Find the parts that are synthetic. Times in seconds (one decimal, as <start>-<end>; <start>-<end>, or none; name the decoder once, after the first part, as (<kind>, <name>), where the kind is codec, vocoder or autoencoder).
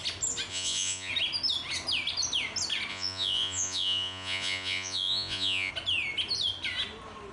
0.5-1.1 (vocoder, Vocos); 2.9-5.7